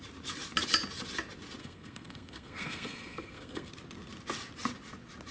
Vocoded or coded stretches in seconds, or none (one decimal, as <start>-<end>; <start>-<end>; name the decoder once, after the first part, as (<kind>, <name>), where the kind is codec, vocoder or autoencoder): 1.6-3.7 (codec, SNAC)